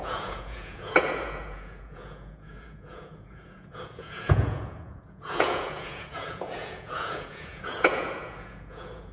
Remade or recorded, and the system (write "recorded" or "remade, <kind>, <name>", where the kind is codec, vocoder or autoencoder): remade, vocoder, Vocos